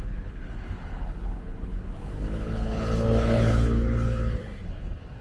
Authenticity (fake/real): fake